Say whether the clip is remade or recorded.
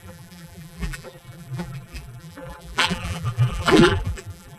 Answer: remade